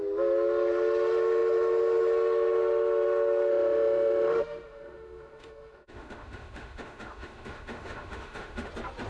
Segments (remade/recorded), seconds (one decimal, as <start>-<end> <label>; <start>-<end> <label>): 0.0-3.5 recorded; 3.5-8.7 remade; 8.7-9.1 recorded